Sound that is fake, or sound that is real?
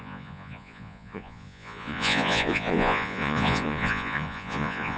fake